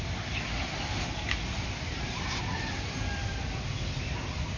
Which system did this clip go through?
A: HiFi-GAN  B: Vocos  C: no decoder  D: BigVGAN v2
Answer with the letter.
C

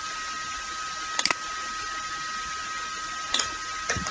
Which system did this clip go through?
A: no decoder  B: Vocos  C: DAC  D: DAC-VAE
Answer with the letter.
A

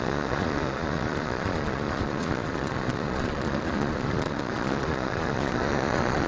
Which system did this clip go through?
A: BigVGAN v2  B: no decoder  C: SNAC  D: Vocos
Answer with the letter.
D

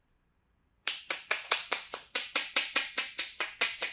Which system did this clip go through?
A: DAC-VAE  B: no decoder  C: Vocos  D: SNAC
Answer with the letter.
C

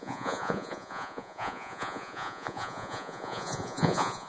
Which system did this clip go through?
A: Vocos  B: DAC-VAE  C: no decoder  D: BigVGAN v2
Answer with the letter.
A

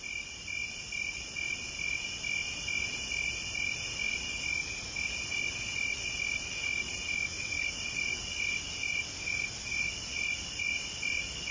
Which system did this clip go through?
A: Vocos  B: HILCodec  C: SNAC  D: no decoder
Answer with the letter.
D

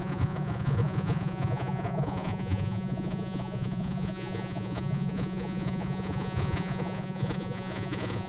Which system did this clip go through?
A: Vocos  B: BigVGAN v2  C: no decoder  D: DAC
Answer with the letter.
A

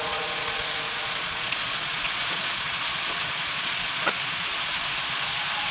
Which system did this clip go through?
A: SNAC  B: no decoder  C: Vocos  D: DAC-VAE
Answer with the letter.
C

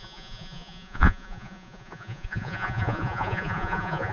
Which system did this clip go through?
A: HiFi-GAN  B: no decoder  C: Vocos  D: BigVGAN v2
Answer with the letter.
C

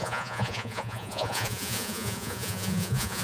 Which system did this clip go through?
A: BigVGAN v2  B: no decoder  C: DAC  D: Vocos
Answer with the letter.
D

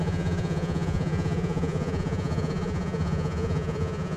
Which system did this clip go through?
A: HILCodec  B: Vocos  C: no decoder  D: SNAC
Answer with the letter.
B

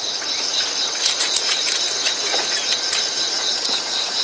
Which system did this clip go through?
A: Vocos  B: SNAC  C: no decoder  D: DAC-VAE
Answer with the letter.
A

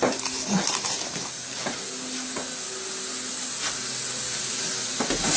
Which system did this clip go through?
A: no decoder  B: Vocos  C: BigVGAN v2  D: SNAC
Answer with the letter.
A